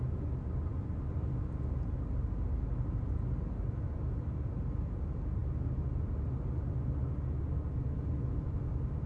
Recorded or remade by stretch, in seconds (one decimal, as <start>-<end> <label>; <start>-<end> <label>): 0.0-9.1 recorded